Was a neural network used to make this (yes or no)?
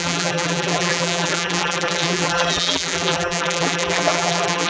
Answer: yes